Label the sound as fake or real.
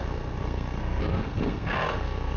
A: fake